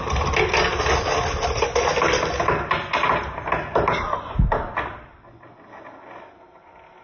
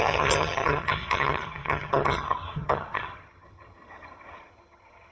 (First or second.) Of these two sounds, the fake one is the second